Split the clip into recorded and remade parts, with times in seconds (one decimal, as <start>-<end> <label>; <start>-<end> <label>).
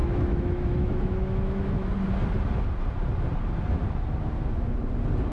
0.0-1.9 remade; 1.9-5.3 recorded